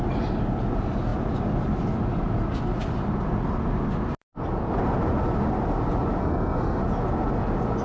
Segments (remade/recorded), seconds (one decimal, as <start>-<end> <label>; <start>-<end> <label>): 0.0-6.2 recorded; 6.2-6.8 remade; 6.8-7.8 recorded